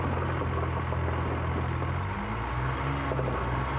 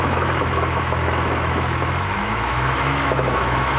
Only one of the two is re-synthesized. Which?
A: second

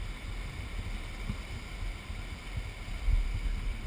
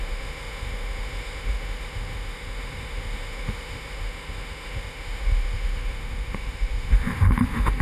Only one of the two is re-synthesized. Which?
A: second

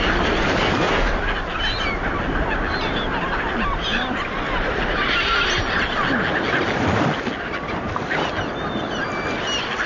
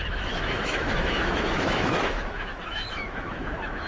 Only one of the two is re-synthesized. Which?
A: second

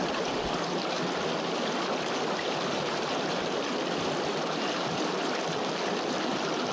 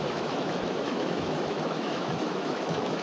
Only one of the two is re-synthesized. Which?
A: second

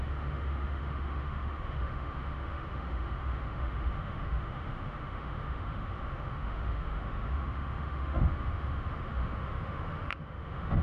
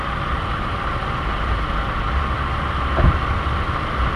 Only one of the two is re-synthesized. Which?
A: first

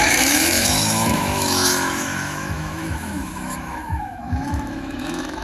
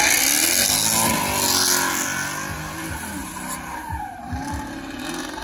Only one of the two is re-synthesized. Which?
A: first